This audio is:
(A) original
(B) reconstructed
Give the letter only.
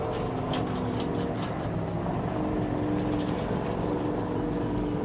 A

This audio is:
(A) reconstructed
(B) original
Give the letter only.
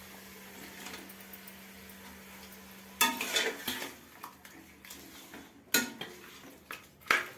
B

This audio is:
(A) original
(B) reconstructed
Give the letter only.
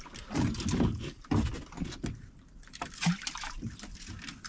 A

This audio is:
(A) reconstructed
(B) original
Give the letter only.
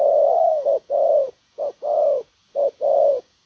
A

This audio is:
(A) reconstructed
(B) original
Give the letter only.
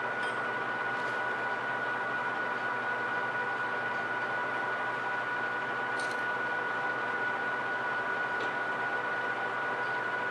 B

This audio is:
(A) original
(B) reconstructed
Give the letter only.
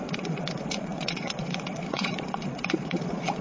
B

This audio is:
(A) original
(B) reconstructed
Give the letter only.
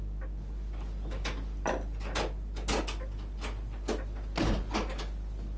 A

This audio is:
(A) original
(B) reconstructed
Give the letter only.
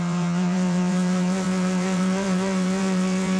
B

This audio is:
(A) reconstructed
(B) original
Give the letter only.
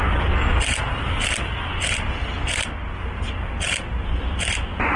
B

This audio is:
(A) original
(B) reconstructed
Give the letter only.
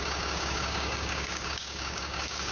B